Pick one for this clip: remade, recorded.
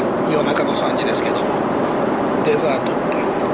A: recorded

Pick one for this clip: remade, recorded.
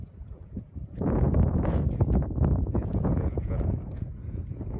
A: remade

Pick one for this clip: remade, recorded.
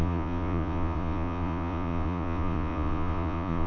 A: remade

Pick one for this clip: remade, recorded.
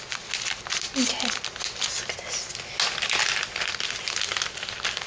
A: recorded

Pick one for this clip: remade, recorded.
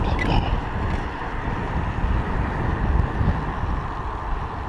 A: recorded